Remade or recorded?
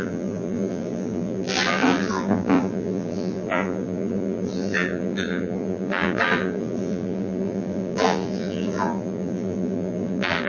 remade